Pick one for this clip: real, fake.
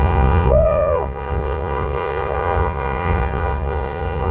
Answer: fake